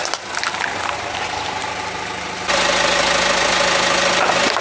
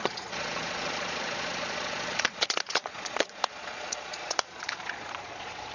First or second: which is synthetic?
second